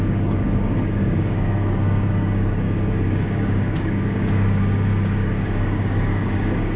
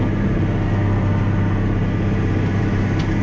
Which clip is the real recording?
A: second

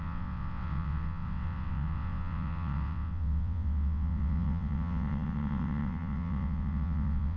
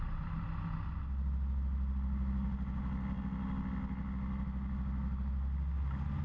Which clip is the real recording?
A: second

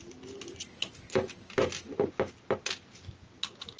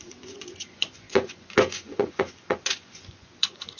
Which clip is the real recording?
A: first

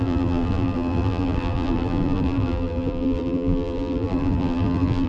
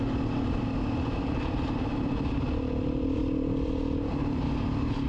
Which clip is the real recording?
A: second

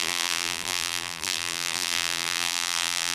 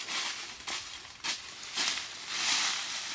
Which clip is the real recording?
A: second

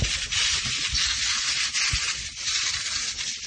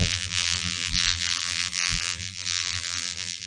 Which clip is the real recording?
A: first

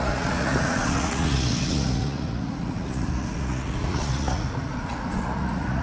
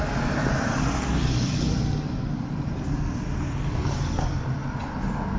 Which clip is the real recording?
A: second